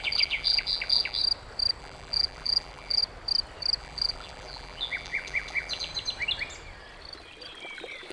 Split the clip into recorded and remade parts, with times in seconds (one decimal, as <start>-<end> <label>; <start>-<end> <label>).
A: 0.0-1.2 remade; 1.2-1.8 recorded; 1.8-3.0 remade; 3.0-3.8 recorded; 3.8-5.9 remade; 5.9-8.1 recorded